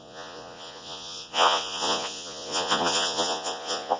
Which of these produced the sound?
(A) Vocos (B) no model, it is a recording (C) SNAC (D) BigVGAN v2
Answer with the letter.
A